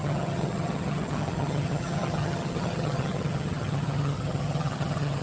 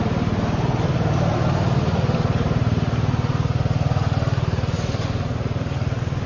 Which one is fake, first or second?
first